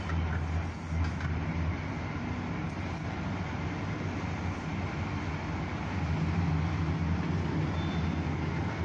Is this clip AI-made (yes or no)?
no